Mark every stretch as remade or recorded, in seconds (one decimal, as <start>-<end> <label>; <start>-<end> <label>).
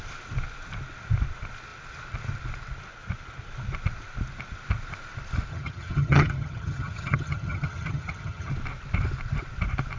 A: 0.0-5.5 recorded; 5.5-8.5 remade; 8.5-10.0 recorded